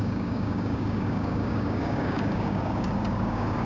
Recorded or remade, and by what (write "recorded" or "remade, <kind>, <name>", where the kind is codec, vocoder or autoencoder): remade, codec, DAC